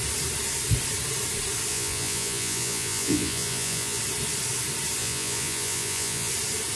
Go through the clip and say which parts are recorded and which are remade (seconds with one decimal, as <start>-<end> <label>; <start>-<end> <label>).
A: 0.0-1.7 recorded; 1.7-4.0 remade; 4.0-5.0 recorded; 5.0-6.3 remade; 6.3-6.8 recorded